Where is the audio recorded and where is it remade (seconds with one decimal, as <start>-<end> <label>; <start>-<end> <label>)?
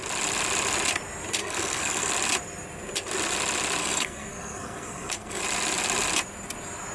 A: 0.0-1.4 recorded; 1.4-2.1 remade; 2.1-3.8 recorded; 3.8-5.4 remade; 5.4-6.9 recorded